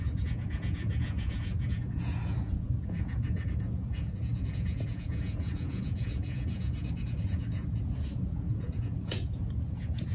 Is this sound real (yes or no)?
no